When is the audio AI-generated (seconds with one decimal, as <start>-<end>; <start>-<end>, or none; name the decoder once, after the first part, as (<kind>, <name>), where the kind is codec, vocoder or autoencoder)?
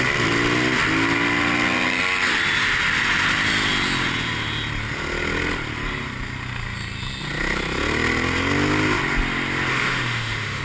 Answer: 9.7-10.6 (autoencoder, DAC-VAE)